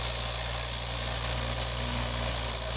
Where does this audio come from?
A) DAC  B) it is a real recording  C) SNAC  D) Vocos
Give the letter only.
B